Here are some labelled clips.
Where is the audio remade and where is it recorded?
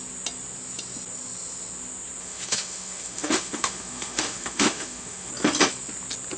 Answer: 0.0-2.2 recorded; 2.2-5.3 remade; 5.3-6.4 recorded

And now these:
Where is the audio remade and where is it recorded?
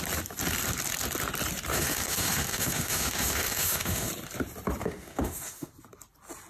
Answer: 0.0-1.7 recorded; 1.7-4.1 remade; 4.1-4.8 recorded; 4.8-5.7 remade; 5.7-6.5 recorded